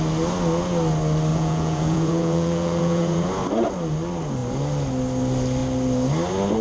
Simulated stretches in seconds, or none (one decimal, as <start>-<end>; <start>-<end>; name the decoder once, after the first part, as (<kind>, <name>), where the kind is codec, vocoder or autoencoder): 1.3-3.3 (vocoder, Vocos)